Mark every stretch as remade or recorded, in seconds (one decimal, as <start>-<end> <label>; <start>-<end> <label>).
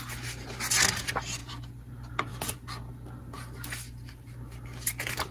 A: 0.0-5.3 recorded